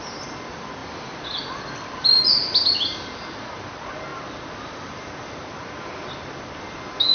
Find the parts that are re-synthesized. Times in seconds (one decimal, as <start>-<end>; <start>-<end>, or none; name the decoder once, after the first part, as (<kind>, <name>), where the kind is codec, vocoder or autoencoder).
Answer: 0.8-2.2 (vocoder, BigVGAN v2)